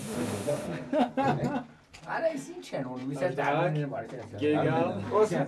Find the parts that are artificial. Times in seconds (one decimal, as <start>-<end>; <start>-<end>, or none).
0.0-1.1